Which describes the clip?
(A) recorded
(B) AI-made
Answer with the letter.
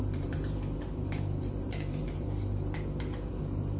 B